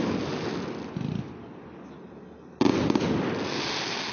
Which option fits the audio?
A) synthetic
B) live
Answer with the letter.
B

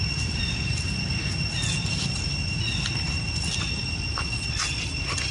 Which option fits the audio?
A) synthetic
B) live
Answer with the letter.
B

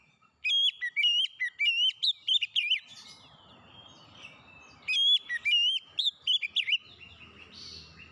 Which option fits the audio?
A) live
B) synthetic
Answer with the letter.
A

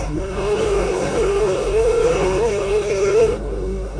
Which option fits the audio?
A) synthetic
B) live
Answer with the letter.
A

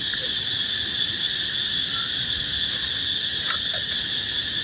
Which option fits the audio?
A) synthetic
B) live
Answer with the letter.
B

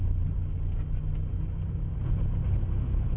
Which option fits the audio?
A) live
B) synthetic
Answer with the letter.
A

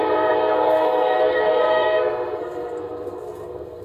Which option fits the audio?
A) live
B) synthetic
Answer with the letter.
B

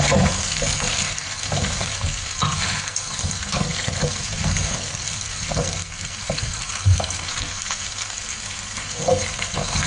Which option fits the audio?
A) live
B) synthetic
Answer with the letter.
B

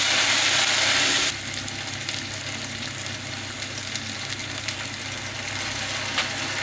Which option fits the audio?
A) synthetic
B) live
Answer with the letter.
B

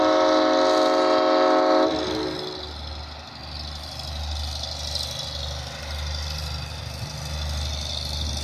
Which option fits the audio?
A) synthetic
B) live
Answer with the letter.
B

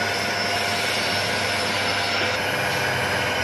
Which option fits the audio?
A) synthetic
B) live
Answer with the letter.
B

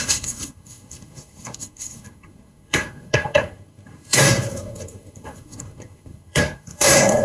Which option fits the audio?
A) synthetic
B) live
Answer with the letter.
A